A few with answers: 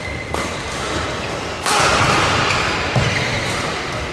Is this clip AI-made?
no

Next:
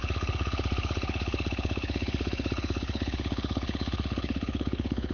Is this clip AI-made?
yes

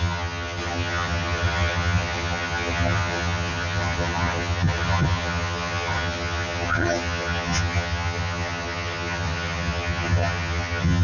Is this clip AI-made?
yes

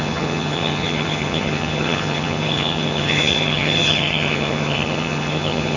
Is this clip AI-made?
yes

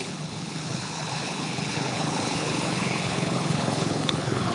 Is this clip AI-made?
yes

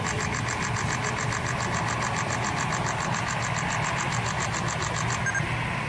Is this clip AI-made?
no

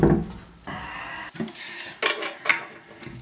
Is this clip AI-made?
no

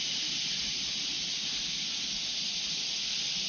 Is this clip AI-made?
no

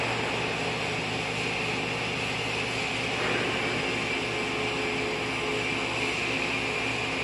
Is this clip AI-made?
no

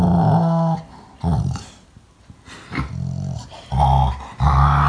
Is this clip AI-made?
no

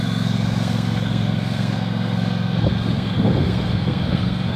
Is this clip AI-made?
yes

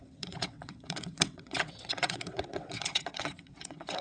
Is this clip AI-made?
yes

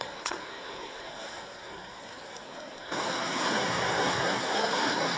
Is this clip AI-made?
yes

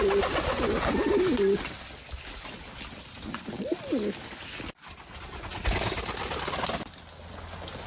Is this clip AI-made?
no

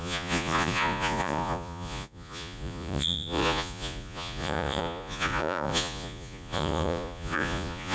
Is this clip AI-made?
yes